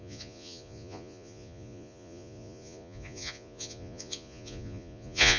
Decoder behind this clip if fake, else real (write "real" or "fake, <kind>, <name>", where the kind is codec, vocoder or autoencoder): fake, vocoder, Vocos